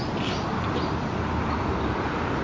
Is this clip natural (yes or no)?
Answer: yes